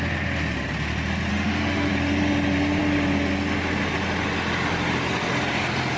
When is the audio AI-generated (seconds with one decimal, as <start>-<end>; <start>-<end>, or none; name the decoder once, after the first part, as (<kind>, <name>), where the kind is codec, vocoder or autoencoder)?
1.3-1.9 (autoencoder, DAC-VAE)